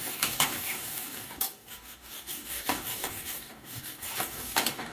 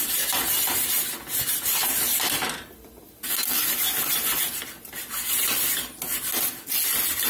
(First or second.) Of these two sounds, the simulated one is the first